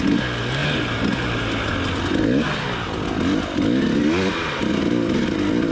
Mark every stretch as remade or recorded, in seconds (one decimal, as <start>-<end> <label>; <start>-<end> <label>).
0.0-5.7 recorded